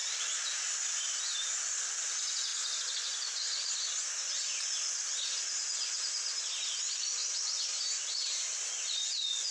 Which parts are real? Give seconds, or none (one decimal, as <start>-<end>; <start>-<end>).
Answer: 0.0-7.2; 8.7-9.5